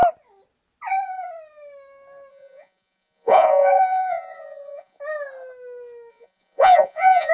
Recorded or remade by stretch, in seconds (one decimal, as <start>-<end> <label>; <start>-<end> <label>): 0.0-2.3 recorded; 2.3-5.0 remade; 5.0-6.1 recorded; 6.1-7.3 remade